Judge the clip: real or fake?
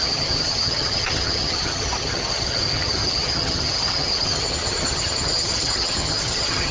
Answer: fake